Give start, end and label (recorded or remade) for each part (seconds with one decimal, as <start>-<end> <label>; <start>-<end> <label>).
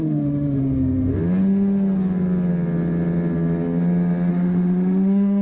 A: 0.0-1.1 remade; 1.1-4.3 recorded; 4.3-5.4 remade